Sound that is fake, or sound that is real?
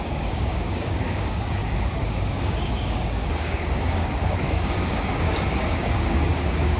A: fake